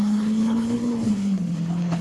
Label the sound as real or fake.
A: fake